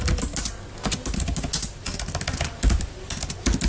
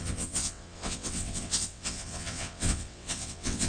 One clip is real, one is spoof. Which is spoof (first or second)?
second